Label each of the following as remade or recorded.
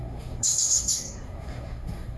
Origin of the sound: remade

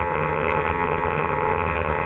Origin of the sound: remade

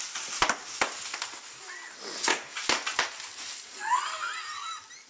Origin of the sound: recorded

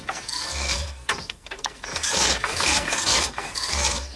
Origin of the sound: remade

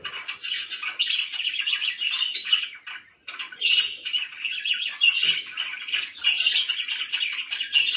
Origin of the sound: recorded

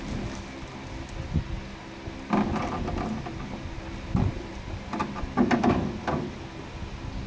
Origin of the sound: recorded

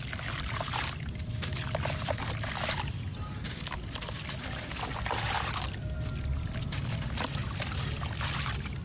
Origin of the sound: recorded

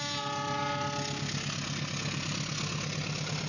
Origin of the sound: recorded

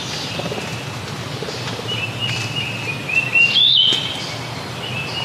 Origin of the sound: recorded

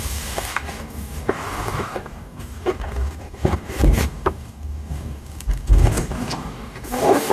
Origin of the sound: remade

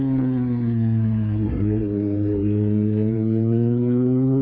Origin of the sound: remade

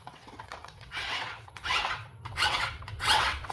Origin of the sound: remade